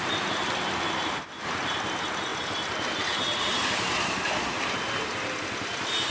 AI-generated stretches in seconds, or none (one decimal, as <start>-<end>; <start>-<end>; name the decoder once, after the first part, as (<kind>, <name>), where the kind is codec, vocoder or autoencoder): none